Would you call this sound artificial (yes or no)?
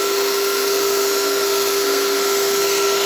yes